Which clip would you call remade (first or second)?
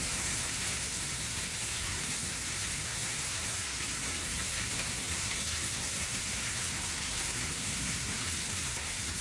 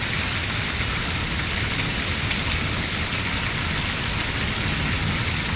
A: first